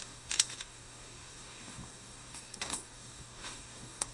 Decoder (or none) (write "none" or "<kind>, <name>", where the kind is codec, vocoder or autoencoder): codec, DAC